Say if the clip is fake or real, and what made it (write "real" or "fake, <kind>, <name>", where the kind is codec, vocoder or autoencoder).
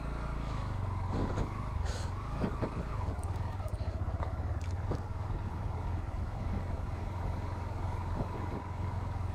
fake, codec, DAC